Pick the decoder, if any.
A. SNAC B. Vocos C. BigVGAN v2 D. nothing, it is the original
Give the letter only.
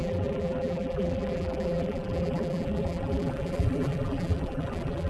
C